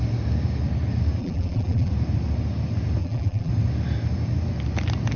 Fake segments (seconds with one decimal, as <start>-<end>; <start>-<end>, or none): 1.2-1.9; 3.0-3.5